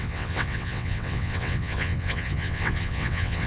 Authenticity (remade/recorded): remade